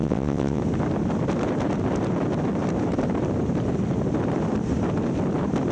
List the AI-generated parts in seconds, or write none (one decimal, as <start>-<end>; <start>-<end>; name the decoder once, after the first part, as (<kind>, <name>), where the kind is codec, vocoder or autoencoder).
0.0-0.6 (vocoder, WaveNeXt)